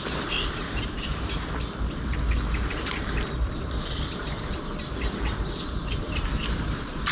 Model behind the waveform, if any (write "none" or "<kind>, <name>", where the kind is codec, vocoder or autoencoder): vocoder, BigVGAN v2